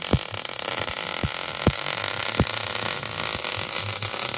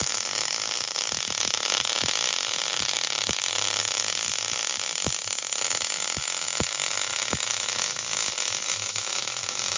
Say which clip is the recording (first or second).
first